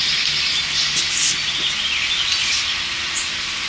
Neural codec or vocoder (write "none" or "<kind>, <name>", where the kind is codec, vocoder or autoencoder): none